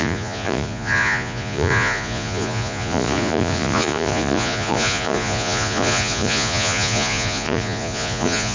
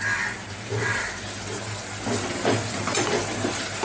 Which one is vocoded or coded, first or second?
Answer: first